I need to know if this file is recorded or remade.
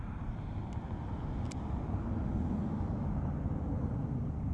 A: recorded